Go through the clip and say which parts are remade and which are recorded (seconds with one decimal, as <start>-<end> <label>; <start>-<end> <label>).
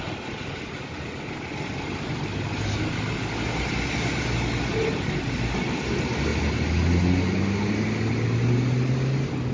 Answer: 0.0-9.5 recorded